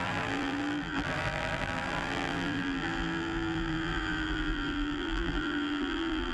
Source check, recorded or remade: remade